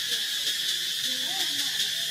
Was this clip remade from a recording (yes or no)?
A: no